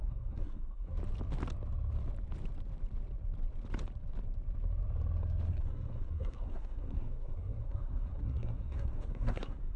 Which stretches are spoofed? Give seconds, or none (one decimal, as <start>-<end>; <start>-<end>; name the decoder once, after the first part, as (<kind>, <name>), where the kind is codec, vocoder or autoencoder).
0.0-0.9 (codec, SNAC); 5.5-9.8